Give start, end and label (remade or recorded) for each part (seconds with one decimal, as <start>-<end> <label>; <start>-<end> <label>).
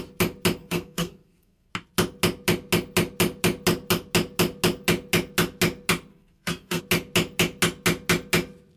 0.0-0.6 recorded; 0.6-1.7 remade; 1.7-6.1 recorded; 6.1-6.8 remade; 6.8-8.8 recorded